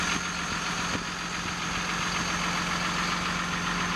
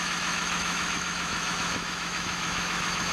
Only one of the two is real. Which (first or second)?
first